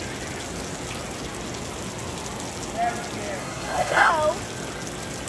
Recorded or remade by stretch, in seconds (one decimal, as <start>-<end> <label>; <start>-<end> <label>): 0.0-3.4 recorded; 3.4-4.1 remade; 4.1-5.3 recorded